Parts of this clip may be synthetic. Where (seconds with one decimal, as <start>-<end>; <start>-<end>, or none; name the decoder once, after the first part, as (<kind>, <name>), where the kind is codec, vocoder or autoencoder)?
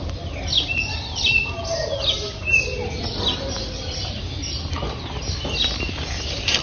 none